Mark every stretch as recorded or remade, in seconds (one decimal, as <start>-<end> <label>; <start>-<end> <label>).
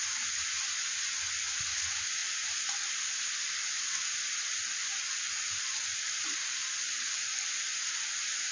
0.0-2.2 recorded; 2.2-3.8 remade; 3.8-5.9 recorded; 5.9-7.7 remade; 7.7-8.5 recorded